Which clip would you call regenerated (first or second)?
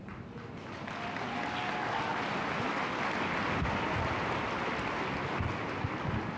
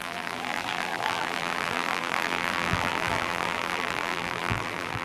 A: second